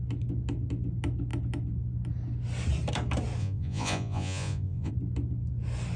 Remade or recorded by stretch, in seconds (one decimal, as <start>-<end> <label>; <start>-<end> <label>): 0.0-3.4 recorded; 3.4-4.9 remade; 4.9-6.0 recorded